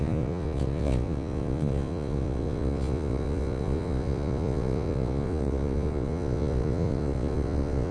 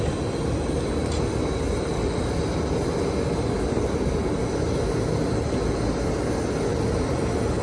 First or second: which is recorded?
second